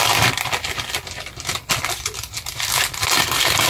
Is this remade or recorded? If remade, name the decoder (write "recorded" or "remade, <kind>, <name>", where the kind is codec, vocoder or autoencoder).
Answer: recorded